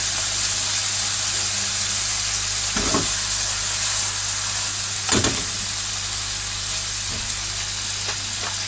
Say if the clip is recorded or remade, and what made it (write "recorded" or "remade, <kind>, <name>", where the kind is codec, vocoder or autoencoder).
recorded